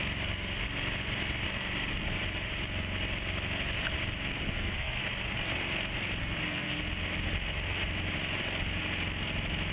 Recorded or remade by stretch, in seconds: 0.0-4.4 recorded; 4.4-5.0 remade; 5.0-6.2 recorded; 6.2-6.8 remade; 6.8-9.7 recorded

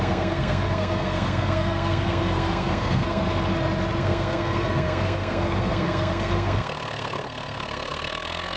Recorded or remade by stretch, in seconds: 0.0-3.2 remade; 3.2-4.0 recorded; 4.0-8.6 remade

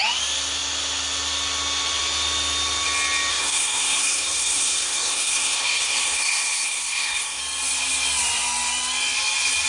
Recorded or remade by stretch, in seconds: 0.0-3.3 recorded; 3.3-7.4 remade; 7.4-9.7 recorded

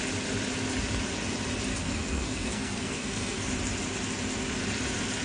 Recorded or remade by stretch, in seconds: 0.0-1.7 recorded; 1.7-3.5 remade; 3.5-5.2 recorded

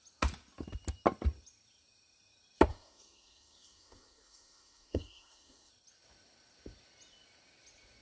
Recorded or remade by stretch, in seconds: 0.0-2.7 recorded; 2.7-5.7 remade; 5.7-8.0 recorded

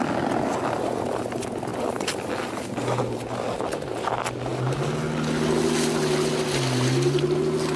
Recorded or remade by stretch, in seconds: 0.0-7.8 recorded

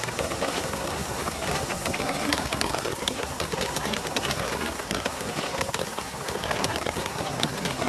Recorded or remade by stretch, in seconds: 0.0-7.9 remade

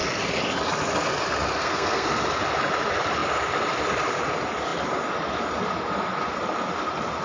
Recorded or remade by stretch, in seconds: 0.0-1.6 recorded; 1.6-2.1 remade; 2.1-7.2 recorded